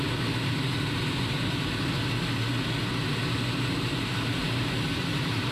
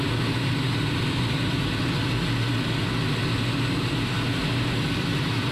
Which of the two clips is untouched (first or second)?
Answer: second